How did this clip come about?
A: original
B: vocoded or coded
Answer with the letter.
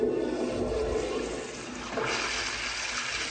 A